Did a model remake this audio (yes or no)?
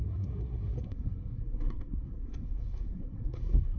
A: yes